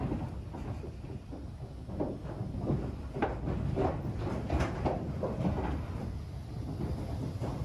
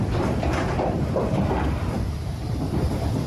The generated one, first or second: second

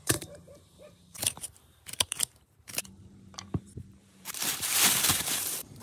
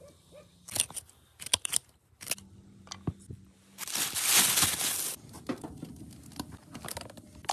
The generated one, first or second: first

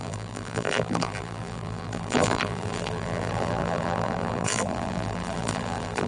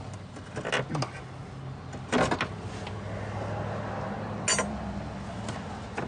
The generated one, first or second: first